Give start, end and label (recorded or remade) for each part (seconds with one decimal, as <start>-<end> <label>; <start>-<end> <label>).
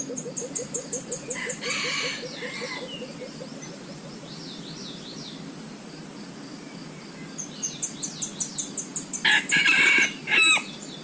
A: 0.0-11.0 recorded